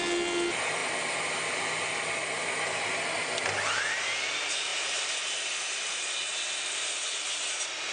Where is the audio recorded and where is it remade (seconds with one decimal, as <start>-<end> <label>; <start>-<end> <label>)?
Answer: 0.0-2.2 recorded; 2.2-2.8 remade; 2.8-4.7 recorded; 4.7-6.1 remade; 6.1-7.9 recorded